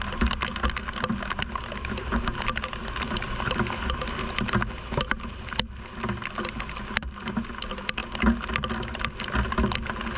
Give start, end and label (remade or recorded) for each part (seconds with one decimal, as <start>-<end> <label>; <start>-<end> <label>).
0.0-10.2 recorded